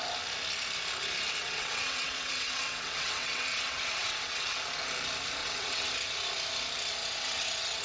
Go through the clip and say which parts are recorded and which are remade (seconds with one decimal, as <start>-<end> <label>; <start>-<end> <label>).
0.0-1.4 recorded; 1.4-4.6 remade; 4.6-5.4 recorded; 5.4-5.9 remade; 5.9-7.0 recorded; 7.0-7.8 remade